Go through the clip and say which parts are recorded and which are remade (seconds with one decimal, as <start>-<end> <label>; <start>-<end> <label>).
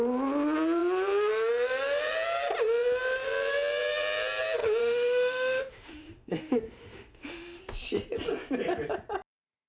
0.0-4.8 recorded; 4.8-7.6 remade; 7.6-9.7 recorded